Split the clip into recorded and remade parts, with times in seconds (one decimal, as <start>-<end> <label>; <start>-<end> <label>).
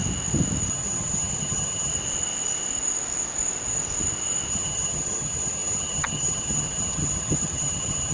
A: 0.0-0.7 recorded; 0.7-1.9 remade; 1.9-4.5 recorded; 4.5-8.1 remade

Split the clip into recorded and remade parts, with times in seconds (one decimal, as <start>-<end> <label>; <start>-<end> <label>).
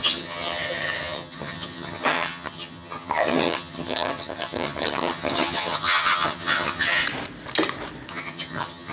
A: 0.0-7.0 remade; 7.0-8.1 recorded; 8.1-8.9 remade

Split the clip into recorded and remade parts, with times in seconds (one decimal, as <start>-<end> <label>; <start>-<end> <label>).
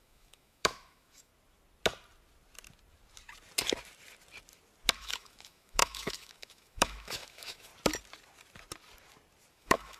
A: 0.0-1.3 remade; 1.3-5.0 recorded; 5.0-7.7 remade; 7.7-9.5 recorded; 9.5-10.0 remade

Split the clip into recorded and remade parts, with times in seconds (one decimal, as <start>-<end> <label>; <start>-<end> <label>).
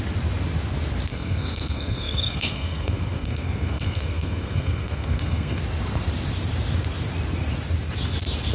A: 0.0-1.1 recorded; 1.1-5.6 remade; 5.6-8.5 recorded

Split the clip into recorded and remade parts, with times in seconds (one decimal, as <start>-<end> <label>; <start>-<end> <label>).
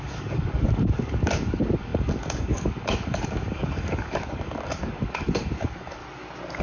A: 0.0-6.0 remade; 6.0-6.6 recorded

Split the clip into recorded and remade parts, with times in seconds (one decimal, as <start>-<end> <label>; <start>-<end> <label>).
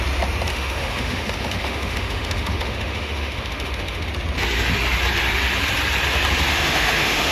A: 0.0-0.5 recorded; 0.5-4.1 remade; 4.1-6.5 recorded; 6.5-7.3 remade